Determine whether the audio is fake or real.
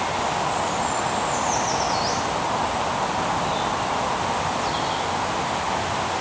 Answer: real